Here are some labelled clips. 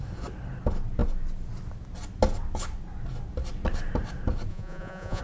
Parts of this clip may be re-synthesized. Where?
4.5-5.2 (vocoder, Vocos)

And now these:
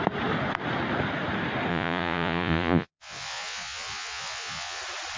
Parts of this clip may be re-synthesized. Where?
1.7-4.8 (vocoder, Vocos)